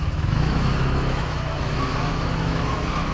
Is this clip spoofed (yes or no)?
yes